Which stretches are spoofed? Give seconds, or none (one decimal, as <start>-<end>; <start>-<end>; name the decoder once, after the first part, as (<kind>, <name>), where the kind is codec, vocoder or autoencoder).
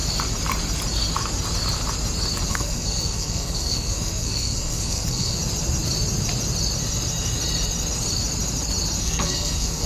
2.5-5.4 (codec, SNAC); 9.0-9.9